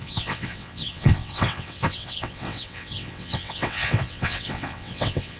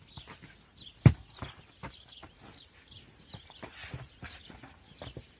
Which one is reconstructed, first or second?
first